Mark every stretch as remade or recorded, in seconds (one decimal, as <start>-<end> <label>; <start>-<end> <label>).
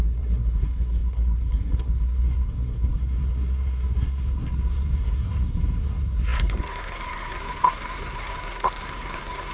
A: 0.0-9.5 remade